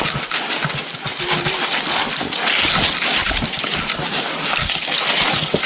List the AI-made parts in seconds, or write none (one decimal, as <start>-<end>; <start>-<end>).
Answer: none